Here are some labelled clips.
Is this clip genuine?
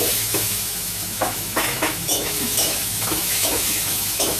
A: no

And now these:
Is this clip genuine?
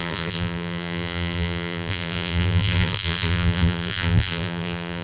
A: no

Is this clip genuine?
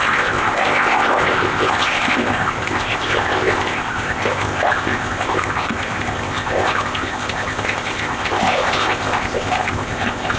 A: no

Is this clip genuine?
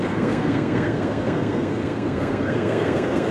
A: no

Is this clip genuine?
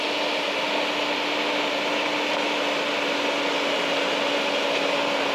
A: yes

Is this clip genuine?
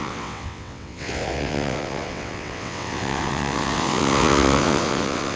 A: no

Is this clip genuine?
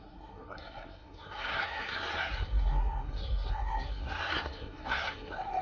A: no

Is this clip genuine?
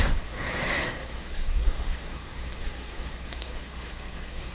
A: no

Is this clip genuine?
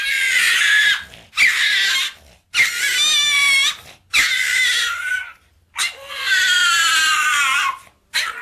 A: yes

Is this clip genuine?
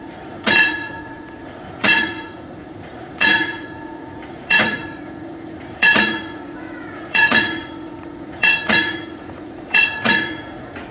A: no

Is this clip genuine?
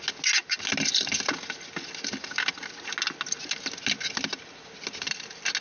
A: yes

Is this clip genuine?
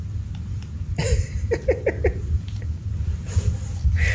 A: yes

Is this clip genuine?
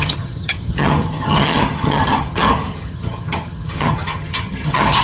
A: no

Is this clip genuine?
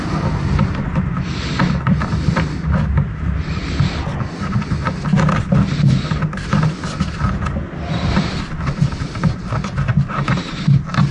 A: yes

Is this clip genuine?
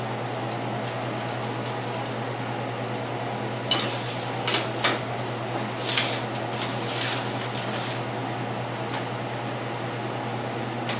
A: yes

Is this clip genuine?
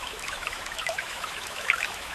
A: no